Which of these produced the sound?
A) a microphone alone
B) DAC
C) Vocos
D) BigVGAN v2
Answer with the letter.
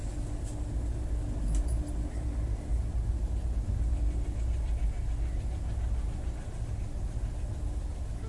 A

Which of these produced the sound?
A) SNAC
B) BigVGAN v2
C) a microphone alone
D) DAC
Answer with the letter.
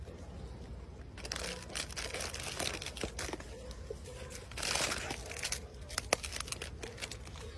C